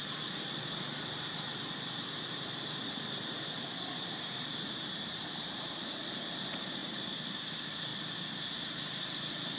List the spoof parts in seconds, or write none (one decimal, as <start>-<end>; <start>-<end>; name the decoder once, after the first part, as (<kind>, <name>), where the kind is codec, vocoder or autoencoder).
0.0-7.9 (vocoder, BigVGAN v2); 8.4-9.6

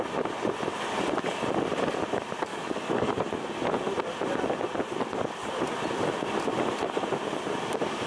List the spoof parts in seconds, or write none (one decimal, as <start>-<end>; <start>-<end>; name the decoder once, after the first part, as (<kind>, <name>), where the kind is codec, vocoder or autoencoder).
2.5-3.1 (codec, DAC)